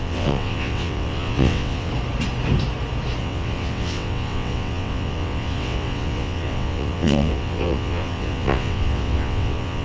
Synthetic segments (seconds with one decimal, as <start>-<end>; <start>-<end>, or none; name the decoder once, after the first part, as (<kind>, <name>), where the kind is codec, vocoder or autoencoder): 0.0-1.9 (vocoder, WaveNeXt); 3.2-9.8